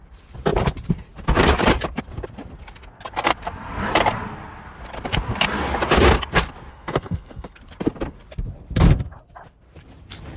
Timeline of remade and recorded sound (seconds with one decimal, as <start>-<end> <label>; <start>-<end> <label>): 0.0-6.7 recorded; 6.7-7.6 remade; 7.6-10.4 recorded